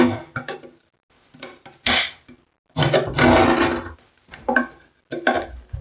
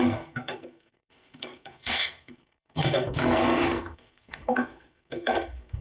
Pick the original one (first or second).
first